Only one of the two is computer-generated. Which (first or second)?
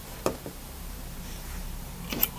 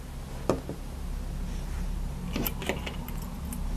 first